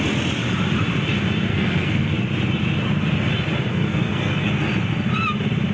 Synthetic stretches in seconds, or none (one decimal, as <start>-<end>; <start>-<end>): 1.5-2.1; 3.7-4.5